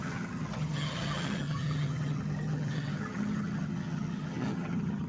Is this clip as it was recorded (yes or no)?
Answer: no